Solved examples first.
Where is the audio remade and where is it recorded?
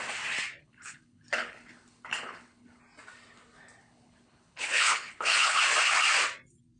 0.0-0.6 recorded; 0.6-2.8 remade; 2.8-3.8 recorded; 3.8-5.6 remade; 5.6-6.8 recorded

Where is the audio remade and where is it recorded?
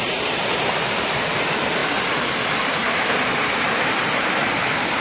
0.0-5.0 recorded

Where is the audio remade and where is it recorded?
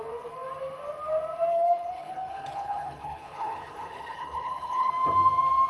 0.0-1.5 recorded; 1.5-4.9 remade; 4.9-5.7 recorded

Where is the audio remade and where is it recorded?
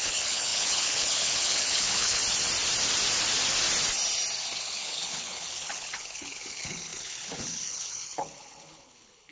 0.0-2.2 remade; 2.2-4.6 recorded; 4.6-9.3 remade